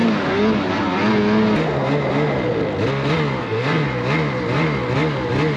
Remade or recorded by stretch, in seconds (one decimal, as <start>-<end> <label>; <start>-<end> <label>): 0.0-3.4 recorded; 3.4-4.0 remade; 4.0-5.6 recorded